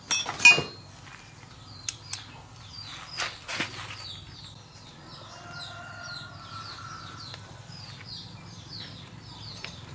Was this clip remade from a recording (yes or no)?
no